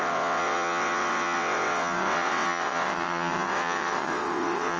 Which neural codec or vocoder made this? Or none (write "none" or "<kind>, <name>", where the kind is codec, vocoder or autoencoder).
vocoder, WaveNeXt